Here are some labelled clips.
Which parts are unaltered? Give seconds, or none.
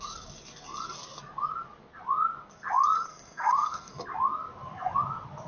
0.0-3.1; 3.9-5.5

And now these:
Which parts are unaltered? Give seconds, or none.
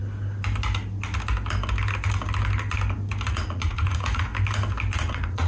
0.0-3.3; 4.3-5.0